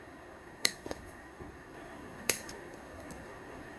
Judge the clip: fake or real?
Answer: fake